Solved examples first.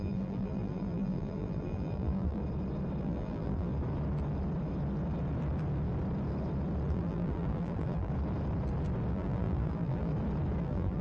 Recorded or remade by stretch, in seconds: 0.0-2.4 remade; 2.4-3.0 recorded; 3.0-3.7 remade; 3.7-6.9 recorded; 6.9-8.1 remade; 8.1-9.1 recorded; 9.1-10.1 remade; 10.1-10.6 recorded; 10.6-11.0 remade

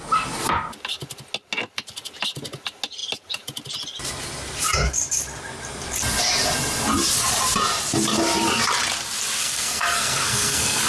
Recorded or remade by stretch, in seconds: 0.0-9.4 recorded; 9.4-10.9 remade

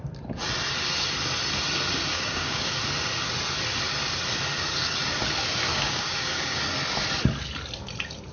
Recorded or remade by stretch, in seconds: 0.0-2.1 recorded; 2.1-2.7 remade; 2.7-5.7 recorded; 5.7-6.6 remade; 6.6-8.3 recorded

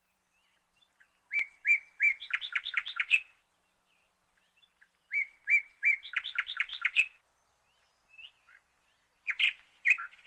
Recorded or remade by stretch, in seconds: 0.0-6.7 remade; 6.7-9.7 recorded; 9.7-10.3 remade

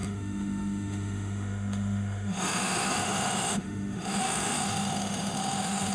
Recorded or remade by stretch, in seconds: 0.0-5.9 remade